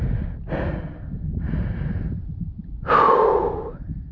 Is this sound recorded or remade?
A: recorded